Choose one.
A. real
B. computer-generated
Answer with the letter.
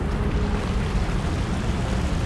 A